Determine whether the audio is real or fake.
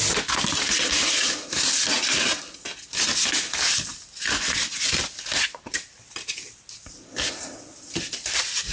real